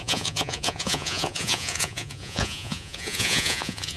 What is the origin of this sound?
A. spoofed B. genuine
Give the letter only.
A